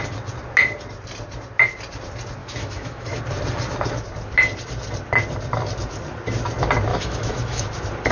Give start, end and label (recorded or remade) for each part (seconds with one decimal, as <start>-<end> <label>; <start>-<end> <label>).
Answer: 0.0-2.4 recorded; 2.4-3.2 remade; 3.2-6.9 recorded; 6.9-7.6 remade; 7.6-8.1 recorded